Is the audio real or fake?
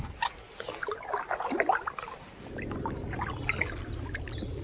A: real